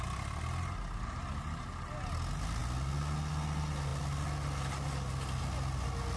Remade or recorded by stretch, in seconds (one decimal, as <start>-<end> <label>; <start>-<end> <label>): 0.0-6.2 recorded